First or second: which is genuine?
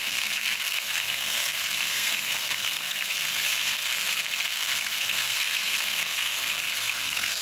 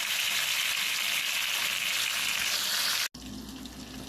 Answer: second